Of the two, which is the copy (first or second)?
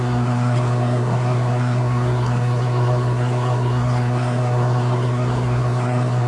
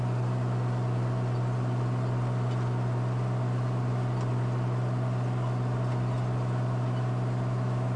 first